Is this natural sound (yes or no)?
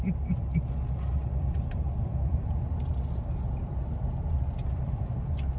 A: yes